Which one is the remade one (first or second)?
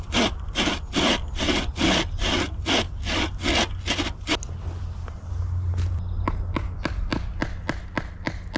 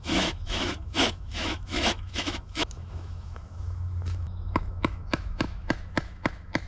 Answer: second